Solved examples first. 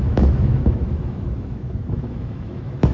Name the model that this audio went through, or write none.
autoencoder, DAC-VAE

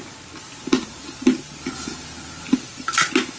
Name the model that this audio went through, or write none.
none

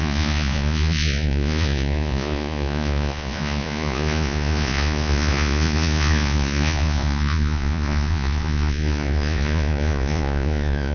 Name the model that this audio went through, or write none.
vocoder, Vocos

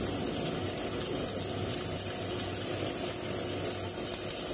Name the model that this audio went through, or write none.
none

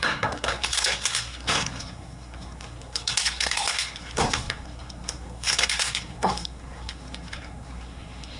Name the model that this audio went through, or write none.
codec, SNAC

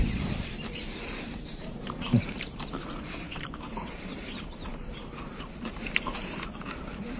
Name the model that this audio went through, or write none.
vocoder, BigVGAN v2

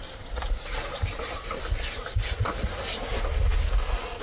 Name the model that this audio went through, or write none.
none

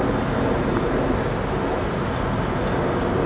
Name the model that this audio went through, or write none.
none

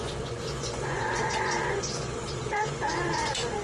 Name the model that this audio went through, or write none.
vocoder, Vocos